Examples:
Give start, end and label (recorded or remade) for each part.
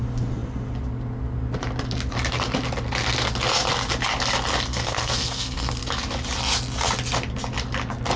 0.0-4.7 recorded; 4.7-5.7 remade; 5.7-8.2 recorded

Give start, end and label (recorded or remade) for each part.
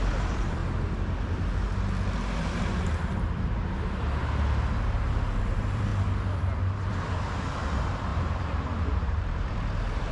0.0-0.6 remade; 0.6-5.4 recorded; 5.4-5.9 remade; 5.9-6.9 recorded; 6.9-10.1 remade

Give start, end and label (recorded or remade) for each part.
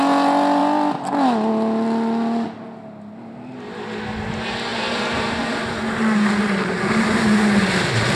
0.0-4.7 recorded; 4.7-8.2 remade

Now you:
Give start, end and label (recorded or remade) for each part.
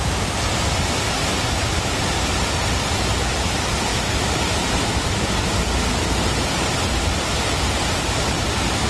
0.0-3.9 recorded; 3.9-4.7 remade; 4.7-8.9 recorded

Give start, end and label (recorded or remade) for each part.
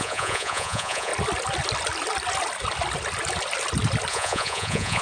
0.0-1.1 remade; 1.1-4.1 recorded; 4.1-5.0 remade